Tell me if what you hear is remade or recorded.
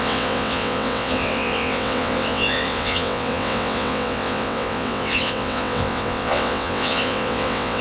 remade